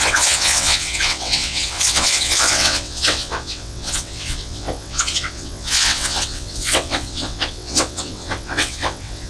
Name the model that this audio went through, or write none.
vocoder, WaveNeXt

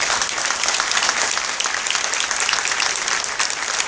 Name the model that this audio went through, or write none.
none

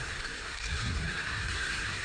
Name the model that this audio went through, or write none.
codec, SNAC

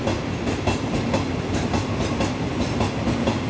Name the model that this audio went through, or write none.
none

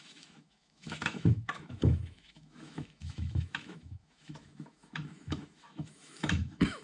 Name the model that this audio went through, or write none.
autoencoder, DAC-VAE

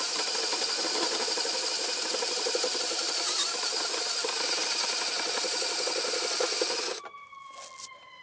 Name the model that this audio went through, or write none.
none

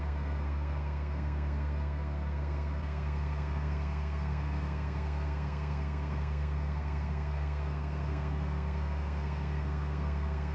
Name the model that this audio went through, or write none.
codec, SNAC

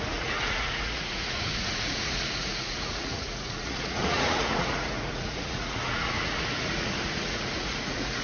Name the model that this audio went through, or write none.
vocoder, Vocos